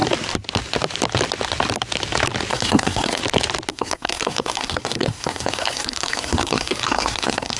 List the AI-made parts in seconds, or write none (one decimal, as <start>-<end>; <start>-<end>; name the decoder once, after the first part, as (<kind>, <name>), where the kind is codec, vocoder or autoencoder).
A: 2.5-3.2 (codec, SNAC); 3.7-7.6